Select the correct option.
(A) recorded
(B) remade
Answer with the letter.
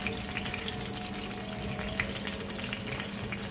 A